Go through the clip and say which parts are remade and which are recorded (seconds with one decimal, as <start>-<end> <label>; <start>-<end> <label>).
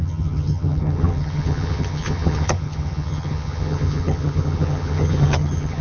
0.0-5.8 remade